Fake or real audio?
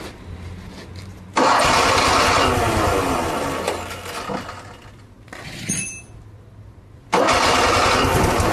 real